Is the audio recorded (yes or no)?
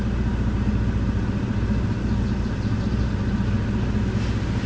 yes